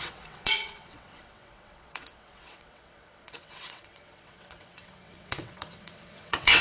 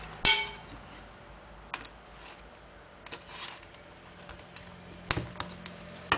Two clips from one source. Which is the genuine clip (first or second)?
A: second